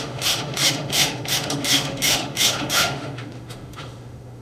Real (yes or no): no